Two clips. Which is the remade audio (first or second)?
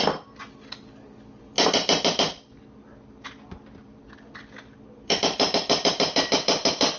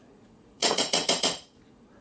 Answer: second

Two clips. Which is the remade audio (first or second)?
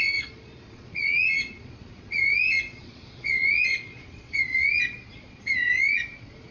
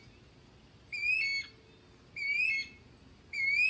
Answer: first